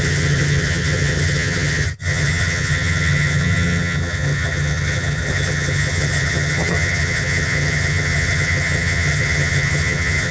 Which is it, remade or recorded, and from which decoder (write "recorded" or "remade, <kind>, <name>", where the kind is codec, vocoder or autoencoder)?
remade, vocoder, HiFi-GAN